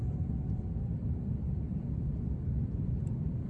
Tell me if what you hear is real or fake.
fake